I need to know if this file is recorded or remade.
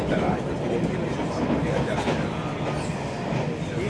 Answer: recorded